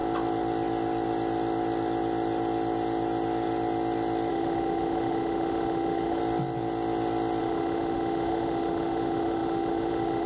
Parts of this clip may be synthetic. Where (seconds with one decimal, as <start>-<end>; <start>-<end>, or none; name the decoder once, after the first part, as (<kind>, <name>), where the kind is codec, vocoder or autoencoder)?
4.3-6.2 (autoencoder, DAC-VAE); 7.4-10.3